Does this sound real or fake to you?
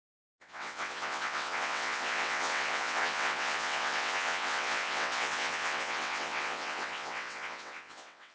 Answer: fake